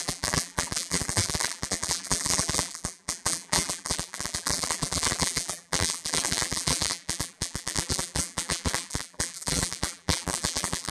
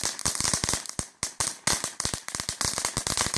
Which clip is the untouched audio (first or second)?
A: second